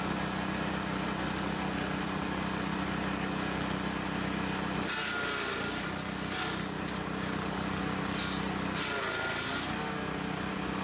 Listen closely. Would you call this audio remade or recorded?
recorded